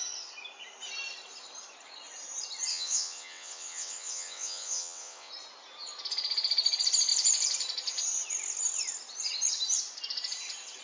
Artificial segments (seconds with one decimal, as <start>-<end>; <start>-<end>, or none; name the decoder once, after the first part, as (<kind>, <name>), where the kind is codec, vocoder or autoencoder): 2.7-5.3 (vocoder, WaveNeXt)